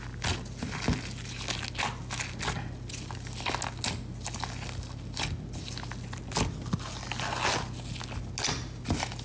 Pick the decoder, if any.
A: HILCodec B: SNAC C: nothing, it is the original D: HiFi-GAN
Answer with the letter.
C